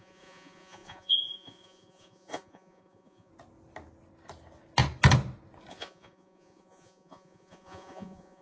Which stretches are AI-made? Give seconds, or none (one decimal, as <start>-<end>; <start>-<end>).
0.0-3.3; 5.7-8.4